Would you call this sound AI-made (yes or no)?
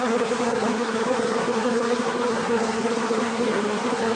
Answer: yes